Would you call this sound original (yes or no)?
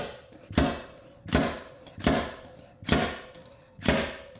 yes